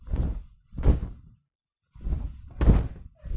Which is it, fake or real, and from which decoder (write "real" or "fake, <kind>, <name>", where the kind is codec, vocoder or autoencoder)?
real